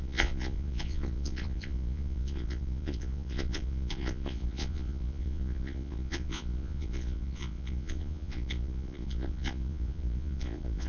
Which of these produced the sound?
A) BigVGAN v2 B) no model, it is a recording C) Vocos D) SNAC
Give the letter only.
C